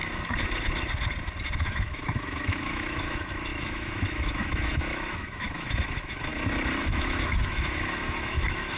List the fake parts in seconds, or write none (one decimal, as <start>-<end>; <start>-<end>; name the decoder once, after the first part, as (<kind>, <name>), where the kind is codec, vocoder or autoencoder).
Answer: 1.7-6.3 (autoencoder, DAC-VAE); 6.8-8.8